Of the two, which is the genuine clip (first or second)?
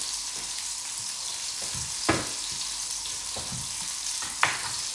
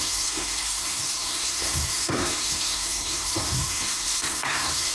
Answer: first